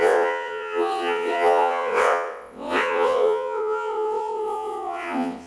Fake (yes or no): yes